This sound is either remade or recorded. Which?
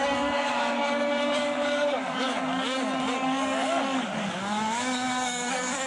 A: remade